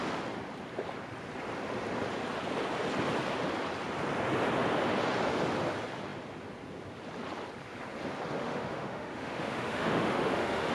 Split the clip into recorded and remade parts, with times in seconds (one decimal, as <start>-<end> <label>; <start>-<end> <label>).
0.0-8.4 recorded; 8.4-10.7 remade